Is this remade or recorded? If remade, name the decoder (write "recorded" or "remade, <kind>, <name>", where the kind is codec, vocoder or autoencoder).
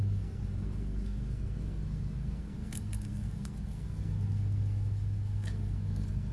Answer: remade, codec, SNAC